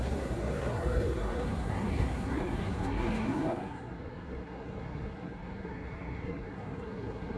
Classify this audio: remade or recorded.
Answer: remade